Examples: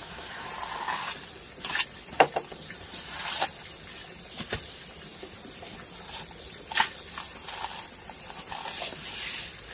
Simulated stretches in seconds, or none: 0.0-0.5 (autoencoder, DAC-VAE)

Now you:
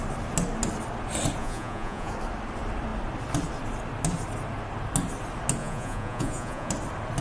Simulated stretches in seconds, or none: 1.4-2.1 (vocoder, Vocos); 5.6-6.7

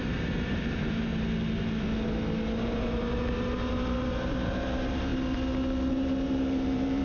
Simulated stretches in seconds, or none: 0.0-1.1 (vocoder, BigVGAN v2); 2.6-5.1; 5.9-7.0